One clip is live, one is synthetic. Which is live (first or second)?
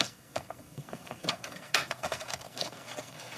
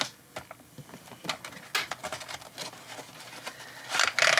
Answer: second